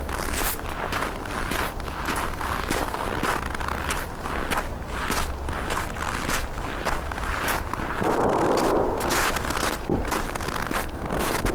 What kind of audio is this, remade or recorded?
recorded